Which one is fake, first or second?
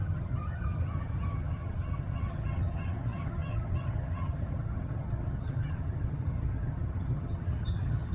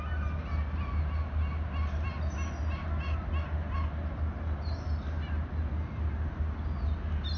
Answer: first